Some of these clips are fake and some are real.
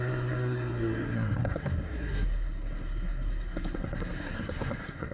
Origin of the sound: fake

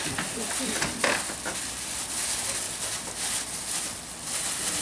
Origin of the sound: real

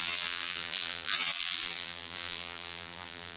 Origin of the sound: fake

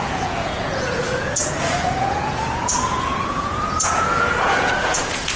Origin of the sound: fake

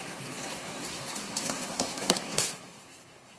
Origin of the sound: fake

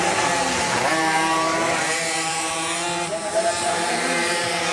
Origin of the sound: fake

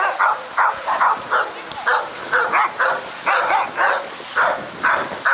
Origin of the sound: real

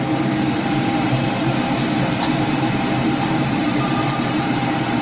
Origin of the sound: fake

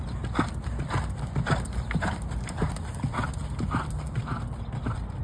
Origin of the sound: real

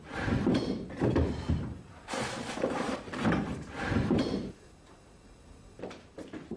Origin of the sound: fake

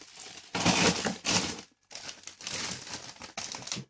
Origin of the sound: real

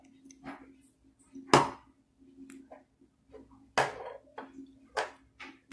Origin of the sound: real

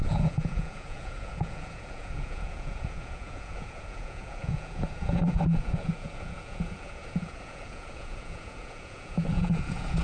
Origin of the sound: fake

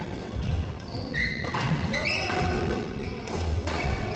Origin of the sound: fake